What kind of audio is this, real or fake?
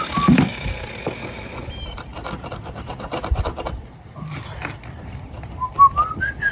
fake